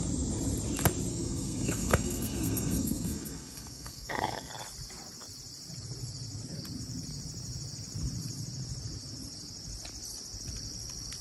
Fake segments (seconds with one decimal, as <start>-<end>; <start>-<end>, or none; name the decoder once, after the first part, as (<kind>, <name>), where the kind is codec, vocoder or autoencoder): 1.1-4.5 (codec, SNAC)